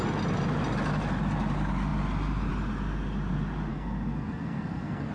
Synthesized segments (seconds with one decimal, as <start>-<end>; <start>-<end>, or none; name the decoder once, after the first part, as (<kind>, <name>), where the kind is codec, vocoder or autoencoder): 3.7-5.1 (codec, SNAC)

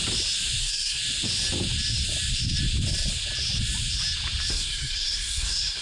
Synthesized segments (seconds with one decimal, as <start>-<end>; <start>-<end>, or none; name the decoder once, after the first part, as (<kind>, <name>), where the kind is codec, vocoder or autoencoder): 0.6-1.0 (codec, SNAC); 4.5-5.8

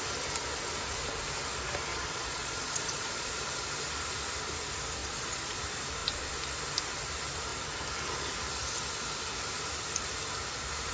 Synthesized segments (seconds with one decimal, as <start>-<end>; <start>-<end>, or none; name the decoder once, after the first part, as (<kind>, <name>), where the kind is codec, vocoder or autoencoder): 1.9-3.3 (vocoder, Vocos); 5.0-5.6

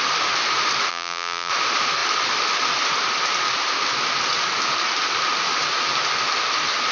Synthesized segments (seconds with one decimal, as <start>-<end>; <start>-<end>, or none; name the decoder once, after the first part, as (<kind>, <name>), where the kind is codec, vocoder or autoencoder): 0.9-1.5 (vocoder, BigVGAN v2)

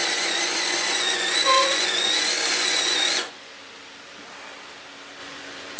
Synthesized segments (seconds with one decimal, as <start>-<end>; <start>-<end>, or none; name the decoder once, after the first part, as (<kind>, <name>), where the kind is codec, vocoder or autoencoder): 0.0-3.5 (vocoder, Vocos); 5.2-5.8